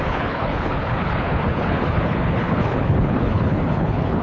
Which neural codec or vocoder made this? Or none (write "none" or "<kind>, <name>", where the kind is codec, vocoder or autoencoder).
codec, HILCodec